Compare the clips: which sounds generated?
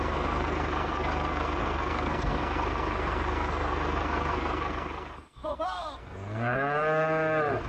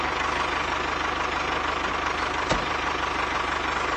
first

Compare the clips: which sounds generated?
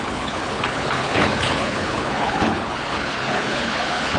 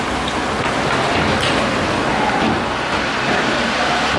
first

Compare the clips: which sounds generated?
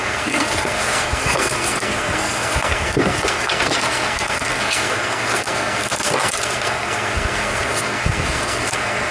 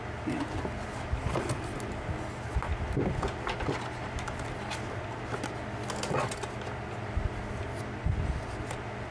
first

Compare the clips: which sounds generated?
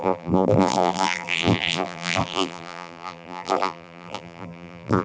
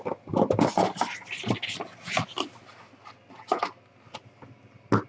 first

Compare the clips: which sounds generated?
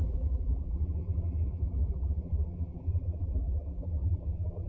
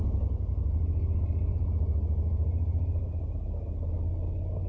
first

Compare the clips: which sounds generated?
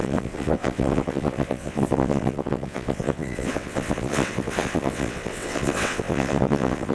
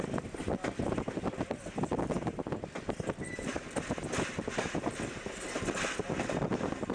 first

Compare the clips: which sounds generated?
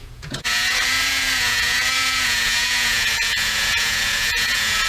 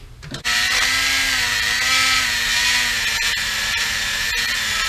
first